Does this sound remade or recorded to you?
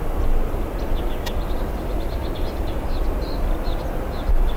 recorded